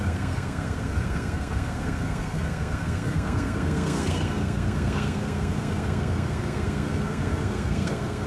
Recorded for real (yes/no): no